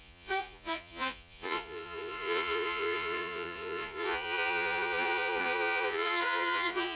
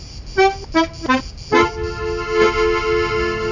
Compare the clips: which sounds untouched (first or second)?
second